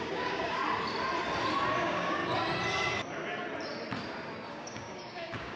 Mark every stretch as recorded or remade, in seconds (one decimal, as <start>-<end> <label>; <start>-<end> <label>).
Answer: 0.0-0.6 remade; 0.6-1.8 recorded; 1.8-2.2 remade; 2.2-4.5 recorded; 4.5-5.6 remade